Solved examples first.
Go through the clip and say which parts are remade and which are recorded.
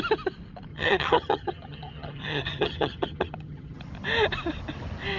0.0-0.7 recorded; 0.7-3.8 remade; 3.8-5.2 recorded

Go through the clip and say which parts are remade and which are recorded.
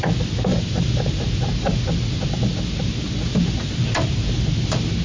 0.0-5.0 recorded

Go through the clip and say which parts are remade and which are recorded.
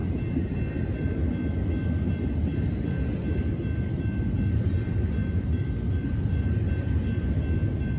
0.0-8.0 recorded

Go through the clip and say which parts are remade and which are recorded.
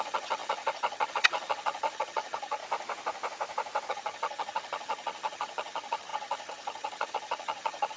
0.0-2.6 remade; 2.6-3.9 recorded; 3.9-8.0 remade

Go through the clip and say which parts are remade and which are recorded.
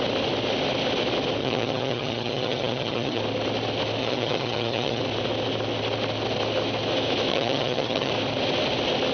0.0-1.4 recorded; 1.4-3.2 remade; 3.2-4.0 recorded; 4.0-5.0 remade; 5.0-7.3 recorded; 7.3-8.1 remade; 8.1-9.1 recorded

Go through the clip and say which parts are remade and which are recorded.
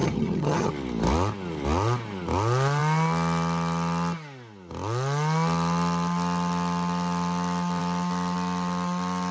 0.0-0.7 remade; 0.7-9.3 recorded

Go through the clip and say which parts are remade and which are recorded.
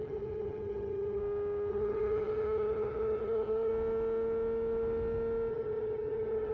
0.0-1.2 remade; 1.2-1.7 recorded; 1.7-3.7 remade; 3.7-5.5 recorded; 5.5-6.5 remade